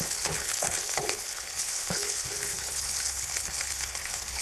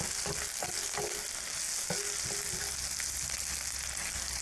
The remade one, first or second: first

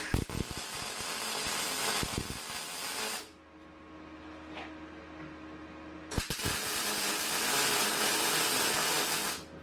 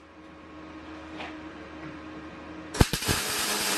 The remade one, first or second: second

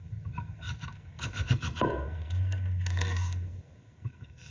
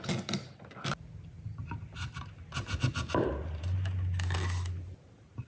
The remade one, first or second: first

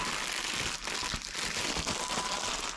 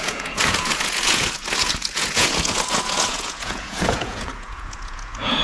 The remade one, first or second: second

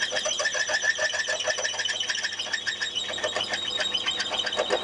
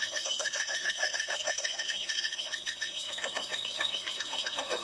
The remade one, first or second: second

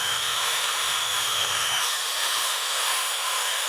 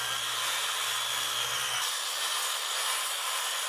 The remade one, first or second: first